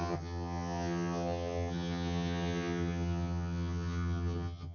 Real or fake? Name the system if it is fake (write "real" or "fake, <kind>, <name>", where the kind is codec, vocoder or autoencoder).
fake, vocoder, HiFi-GAN